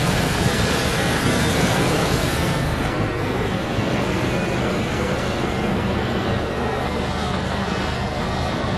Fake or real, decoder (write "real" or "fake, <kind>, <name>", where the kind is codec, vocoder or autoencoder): fake, codec, SNAC